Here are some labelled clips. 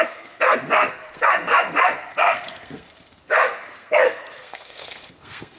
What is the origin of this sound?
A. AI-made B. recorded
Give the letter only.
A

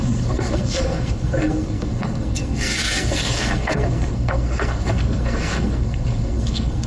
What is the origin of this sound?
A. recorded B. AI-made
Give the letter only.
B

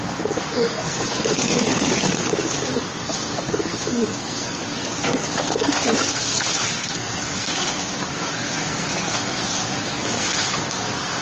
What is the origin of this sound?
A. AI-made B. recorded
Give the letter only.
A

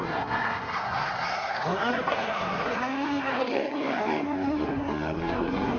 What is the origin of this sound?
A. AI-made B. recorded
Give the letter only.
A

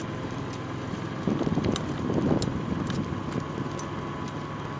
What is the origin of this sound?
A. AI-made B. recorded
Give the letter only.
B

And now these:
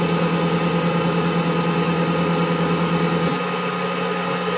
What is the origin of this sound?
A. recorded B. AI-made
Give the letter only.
A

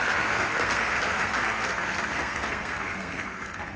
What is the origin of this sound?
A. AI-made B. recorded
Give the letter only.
A